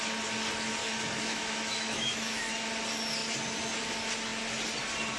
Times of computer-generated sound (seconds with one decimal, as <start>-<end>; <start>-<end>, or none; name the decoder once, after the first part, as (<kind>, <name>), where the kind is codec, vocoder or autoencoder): 0.8-2.5 (autoencoder, DAC-VAE)